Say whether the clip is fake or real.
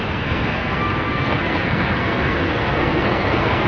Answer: fake